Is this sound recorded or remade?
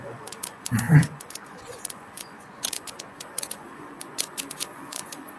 remade